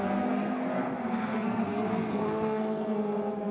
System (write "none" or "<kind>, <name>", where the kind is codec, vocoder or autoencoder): codec, SNAC